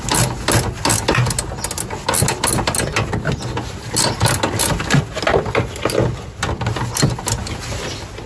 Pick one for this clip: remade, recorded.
recorded